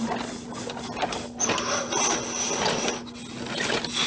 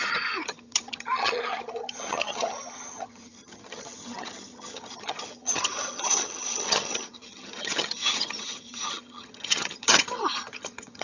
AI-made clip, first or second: second